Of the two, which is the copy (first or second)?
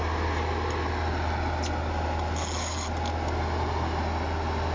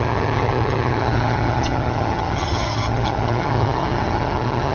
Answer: second